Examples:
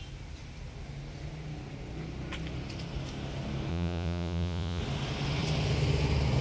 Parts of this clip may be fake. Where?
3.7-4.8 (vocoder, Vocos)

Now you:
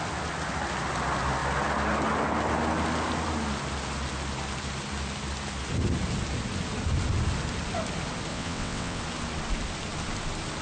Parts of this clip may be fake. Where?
8.3-9.0 (vocoder, WaveNeXt)

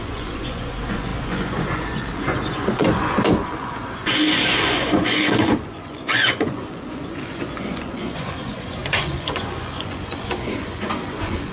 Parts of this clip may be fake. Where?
0.0-11.5 (vocoder, Vocos)

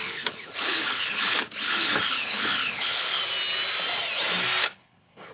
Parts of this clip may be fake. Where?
0.0-3.2 (codec, HILCodec); 4.6-5.3

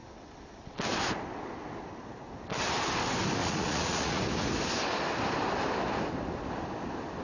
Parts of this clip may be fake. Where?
3.4-4.2 (vocoder, Vocos)

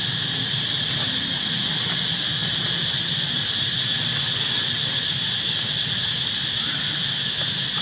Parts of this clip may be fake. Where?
none

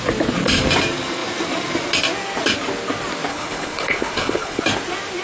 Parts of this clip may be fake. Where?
3.3-4.6 (codec, HILCodec)